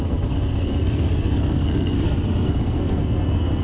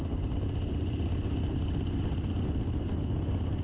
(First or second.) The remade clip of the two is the first